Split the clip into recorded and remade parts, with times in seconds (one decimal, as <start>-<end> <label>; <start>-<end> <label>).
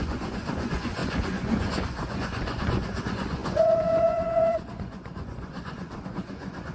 0.0-6.7 remade